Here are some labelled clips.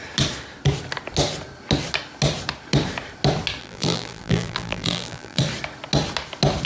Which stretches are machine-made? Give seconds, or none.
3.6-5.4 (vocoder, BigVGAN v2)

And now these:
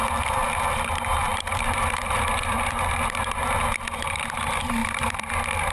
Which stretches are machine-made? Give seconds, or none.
0.0-0.6 (vocoder, BigVGAN v2); 1.3-3.7; 4.8-5.3

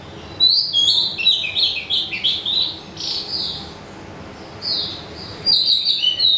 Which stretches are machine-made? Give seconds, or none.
none

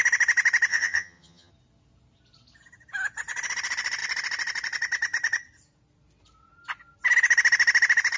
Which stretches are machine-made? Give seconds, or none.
0.7-1.5 (vocoder, HiFi-GAN)

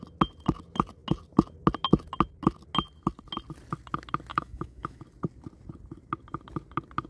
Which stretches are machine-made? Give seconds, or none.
4.3-5.0 (autoencoder, DAC-VAE)

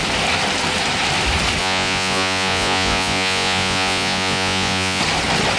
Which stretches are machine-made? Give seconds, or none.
1.6-5.0 (vocoder, Vocos)